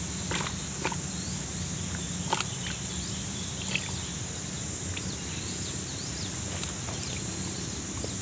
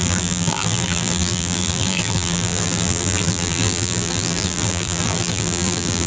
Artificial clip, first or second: second